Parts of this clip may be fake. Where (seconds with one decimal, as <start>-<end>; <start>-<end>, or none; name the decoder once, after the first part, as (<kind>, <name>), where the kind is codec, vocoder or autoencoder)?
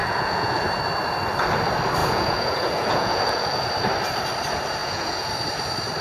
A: 0.0-0.6 (vocoder, Vocos); 2.0-3.7; 4.8-5.3